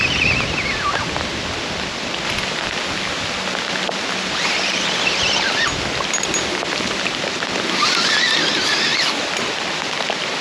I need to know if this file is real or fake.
real